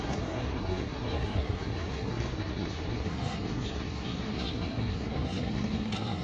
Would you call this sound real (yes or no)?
no